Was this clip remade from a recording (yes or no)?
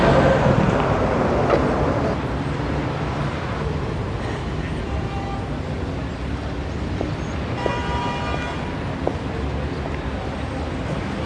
no